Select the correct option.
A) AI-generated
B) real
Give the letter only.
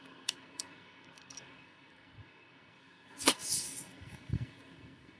A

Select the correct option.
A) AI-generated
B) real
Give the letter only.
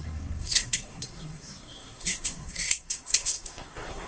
A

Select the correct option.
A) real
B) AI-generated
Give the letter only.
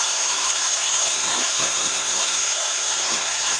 B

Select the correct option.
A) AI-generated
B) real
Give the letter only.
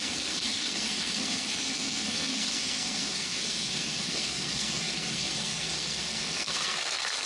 A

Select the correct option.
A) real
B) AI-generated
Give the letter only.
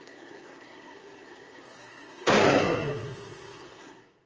B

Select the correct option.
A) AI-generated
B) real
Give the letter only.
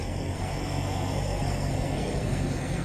A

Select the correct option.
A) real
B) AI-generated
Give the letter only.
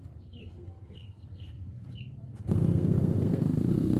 B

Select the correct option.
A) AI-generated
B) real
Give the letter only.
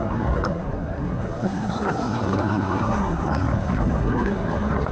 A